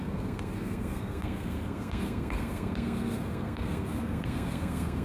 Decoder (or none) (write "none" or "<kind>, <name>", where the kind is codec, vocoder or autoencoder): codec, SNAC